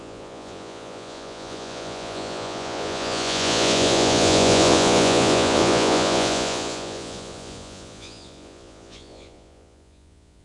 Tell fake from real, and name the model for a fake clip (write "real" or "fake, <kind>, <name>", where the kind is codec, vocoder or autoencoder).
fake, vocoder, Vocos